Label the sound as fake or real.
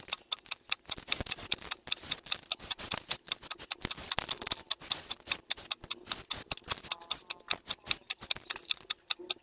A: real